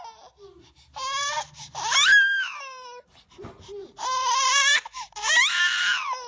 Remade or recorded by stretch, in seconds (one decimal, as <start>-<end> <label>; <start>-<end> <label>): 0.0-1.2 recorded; 1.2-3.3 remade; 3.3-3.8 recorded; 3.8-5.4 remade; 5.4-6.3 recorded